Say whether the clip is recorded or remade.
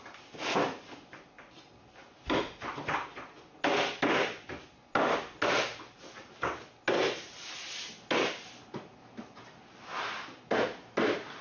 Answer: recorded